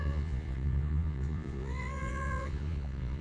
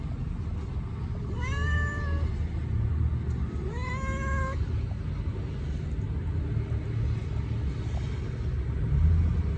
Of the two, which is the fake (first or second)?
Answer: first